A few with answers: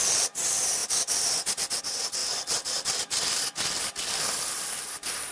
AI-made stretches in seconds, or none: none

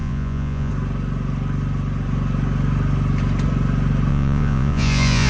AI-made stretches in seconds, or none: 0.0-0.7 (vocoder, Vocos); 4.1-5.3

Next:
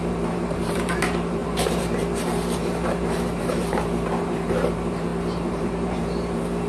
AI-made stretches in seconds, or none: 0.0-6.7 (vocoder, BigVGAN v2)

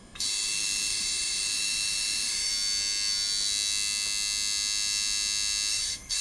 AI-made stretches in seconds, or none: 0.0-2.5 (autoencoder, DAC-VAE); 5.7-6.2

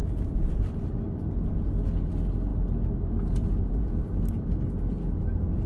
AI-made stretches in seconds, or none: 0.0-1.1 (vocoder, BigVGAN v2)